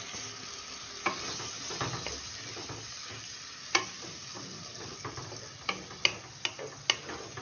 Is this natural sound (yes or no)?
yes